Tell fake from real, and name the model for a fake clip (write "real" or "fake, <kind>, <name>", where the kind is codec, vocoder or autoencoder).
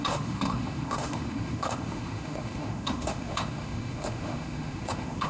fake, autoencoder, DAC-VAE